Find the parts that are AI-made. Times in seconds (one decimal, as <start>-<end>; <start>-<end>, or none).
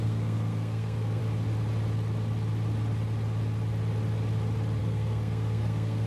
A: 0.0-1.2; 4.8-6.1